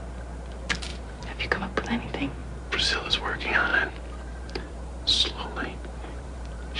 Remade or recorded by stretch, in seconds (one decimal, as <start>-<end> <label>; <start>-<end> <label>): 0.0-0.9 recorded; 0.9-1.6 remade; 1.6-2.4 recorded; 2.4-3.2 remade; 3.2-3.7 recorded; 3.7-6.8 remade